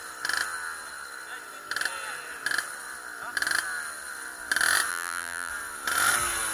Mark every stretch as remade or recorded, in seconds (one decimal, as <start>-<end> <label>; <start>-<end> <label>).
0.0-4.9 recorded; 4.9-5.5 remade; 5.5-6.5 recorded